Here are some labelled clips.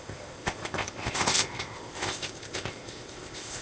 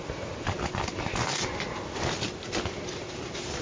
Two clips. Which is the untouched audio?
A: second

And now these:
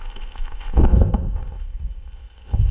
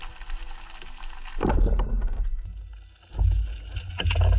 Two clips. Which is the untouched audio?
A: second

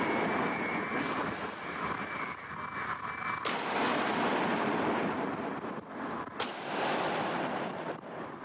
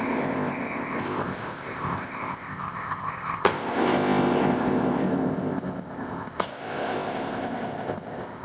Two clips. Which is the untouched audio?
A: first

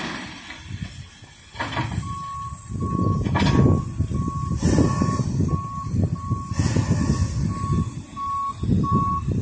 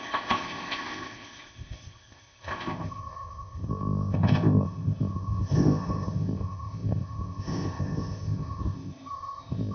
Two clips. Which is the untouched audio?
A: first